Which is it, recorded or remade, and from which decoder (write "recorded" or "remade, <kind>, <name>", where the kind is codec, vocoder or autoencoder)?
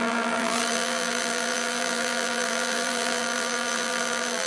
remade, vocoder, BigVGAN v2